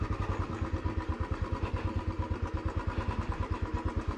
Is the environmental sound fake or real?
real